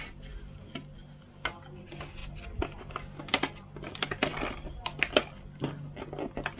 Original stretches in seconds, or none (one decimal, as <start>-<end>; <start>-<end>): 0.0-6.6